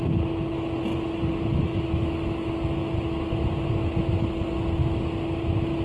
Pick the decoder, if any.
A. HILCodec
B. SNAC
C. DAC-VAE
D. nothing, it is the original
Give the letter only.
D